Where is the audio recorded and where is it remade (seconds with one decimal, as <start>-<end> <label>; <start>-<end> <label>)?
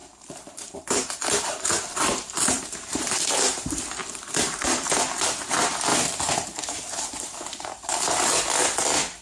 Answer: 0.0-4.9 remade; 4.9-5.9 recorded; 5.9-8.2 remade; 8.2-9.2 recorded